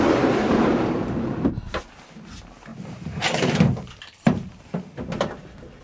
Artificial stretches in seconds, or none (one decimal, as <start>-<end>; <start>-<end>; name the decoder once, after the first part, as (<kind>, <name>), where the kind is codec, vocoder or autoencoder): 0.4-1.3 (vocoder, BigVGAN v2); 2.7-4.7

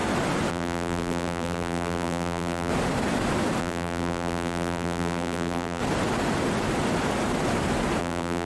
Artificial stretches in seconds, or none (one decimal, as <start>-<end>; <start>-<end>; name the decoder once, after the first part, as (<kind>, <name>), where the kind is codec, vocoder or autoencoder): 0.5-2.7 (vocoder, BigVGAN v2); 3.6-5.8; 8.0-8.5

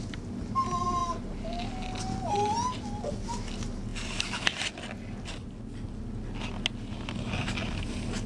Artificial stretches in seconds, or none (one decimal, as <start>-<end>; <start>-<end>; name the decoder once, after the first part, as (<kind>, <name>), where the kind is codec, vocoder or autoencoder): none

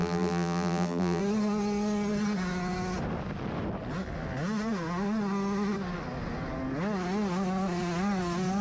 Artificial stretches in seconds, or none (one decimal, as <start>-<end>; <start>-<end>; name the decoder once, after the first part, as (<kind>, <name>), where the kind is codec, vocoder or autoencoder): 0.0-1.2 (vocoder, BigVGAN v2)

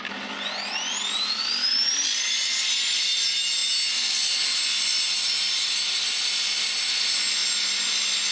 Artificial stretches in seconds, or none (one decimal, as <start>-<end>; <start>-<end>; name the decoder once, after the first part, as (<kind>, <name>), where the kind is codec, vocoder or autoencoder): none

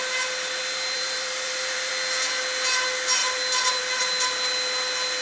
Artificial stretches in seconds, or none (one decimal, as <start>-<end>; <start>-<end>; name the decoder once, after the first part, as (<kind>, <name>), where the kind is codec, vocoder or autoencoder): 0.6-1.9 (vocoder, BigVGAN v2)

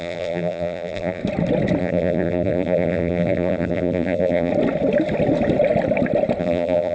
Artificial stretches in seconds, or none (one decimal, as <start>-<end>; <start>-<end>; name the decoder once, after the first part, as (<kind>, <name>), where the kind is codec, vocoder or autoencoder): 0.0-1.2 (vocoder, BigVGAN v2); 1.8-4.5; 6.4-6.9

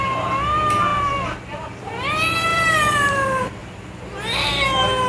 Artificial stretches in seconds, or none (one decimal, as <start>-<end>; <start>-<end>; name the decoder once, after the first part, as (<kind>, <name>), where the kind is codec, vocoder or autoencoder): 2.5-3.1 (vocoder, BigVGAN v2); 3.6-4.5